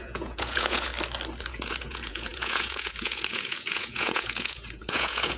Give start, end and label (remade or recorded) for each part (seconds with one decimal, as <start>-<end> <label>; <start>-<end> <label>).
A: 0.0-0.9 remade; 0.9-1.4 recorded; 1.4-5.4 remade

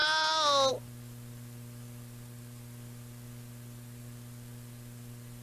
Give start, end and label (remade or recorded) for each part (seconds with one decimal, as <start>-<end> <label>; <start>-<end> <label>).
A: 0.0-5.4 recorded